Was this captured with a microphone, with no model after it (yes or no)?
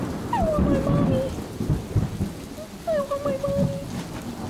yes